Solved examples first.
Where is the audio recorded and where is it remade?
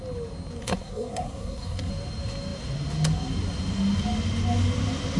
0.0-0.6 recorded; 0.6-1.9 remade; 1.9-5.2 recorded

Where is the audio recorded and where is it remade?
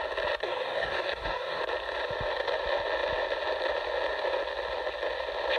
0.0-0.4 recorded; 0.4-1.6 remade; 1.6-5.6 recorded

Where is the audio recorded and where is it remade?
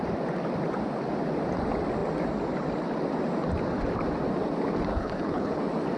0.0-4.9 recorded; 4.9-5.6 remade; 5.6-6.0 recorded